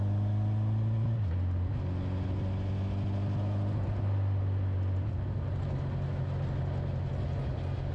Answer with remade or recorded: recorded